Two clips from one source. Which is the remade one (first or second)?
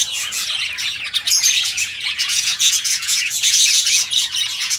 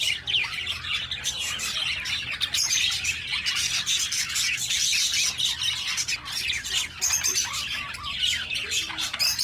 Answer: first